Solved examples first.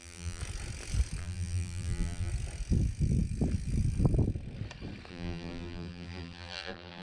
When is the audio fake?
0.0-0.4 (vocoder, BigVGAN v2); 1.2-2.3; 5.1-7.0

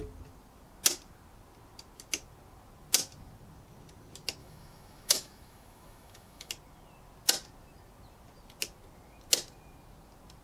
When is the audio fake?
4.4-6.5 (autoencoder, DAC-VAE)